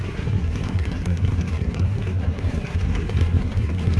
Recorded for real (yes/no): no